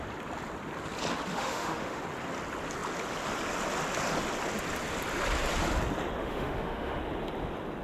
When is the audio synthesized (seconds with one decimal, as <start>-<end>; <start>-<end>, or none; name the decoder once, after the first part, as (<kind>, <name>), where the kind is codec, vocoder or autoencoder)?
1.3-2.0 (autoencoder, DAC-VAE); 6.2-7.0